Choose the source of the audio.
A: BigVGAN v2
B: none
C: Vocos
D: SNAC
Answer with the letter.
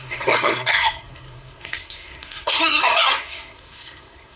D